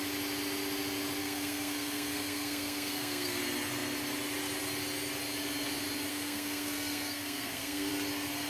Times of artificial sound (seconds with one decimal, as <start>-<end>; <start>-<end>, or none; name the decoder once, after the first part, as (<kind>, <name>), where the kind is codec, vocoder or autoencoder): 1.2-3.4 (codec, SNAC); 6.1-7.9